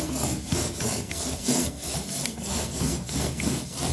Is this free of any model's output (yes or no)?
no